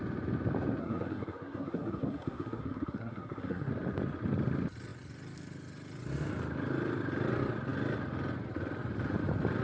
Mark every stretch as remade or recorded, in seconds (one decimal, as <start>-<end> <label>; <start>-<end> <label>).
0.0-0.8 recorded; 0.8-3.7 remade; 3.7-9.6 recorded